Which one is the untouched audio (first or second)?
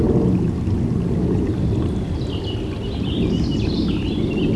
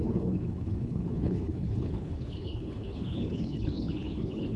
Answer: first